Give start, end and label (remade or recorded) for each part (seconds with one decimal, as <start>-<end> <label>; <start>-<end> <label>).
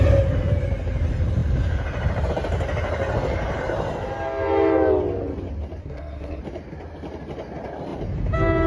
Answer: 0.0-5.8 recorded; 5.8-6.4 remade; 6.4-8.7 recorded